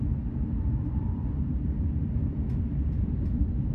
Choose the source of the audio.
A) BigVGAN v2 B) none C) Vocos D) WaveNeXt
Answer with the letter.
A